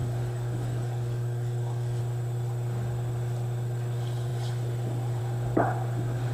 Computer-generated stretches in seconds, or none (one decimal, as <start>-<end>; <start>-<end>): 0.0-2.0